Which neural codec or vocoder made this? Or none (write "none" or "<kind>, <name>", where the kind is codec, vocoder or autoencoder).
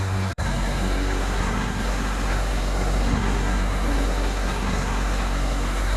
codec, SNAC